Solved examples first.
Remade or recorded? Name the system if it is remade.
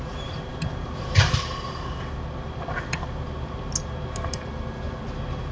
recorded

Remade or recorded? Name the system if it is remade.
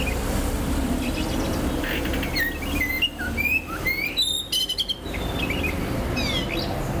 recorded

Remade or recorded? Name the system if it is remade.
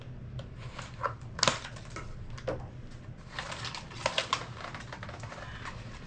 recorded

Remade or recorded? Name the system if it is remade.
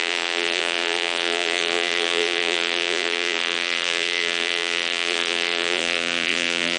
remade, vocoder, BigVGAN v2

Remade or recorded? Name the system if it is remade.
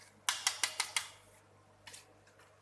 recorded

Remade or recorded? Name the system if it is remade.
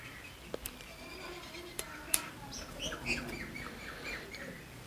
remade, vocoder, BigVGAN v2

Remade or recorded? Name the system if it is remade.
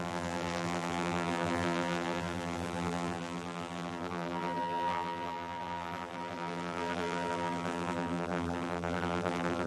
remade, vocoder, BigVGAN v2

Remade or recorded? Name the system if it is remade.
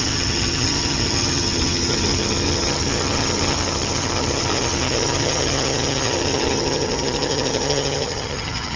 remade, vocoder, HiFi-GAN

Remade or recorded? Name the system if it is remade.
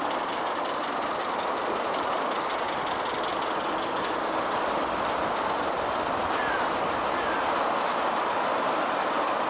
recorded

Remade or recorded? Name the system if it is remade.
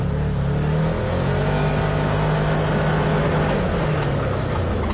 recorded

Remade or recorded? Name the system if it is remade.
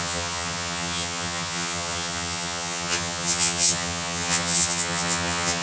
remade, vocoder, HiFi-GAN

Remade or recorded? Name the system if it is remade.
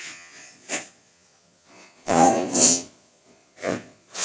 remade, vocoder, Vocos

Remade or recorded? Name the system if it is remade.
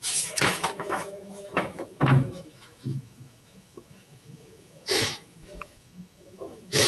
remade, autoencoder, DAC-VAE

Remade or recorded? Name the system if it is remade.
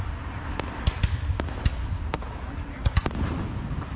recorded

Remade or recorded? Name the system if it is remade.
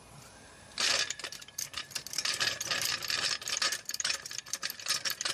remade, vocoder, BigVGAN v2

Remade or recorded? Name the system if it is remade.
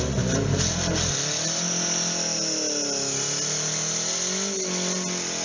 recorded